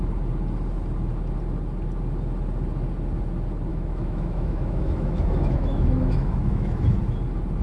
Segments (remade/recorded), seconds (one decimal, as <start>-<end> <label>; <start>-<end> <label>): 0.0-3.7 recorded; 3.7-7.0 remade; 7.0-7.6 recorded

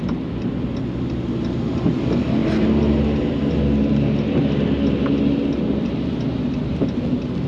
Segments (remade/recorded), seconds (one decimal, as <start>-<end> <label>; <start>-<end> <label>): 0.0-7.5 recorded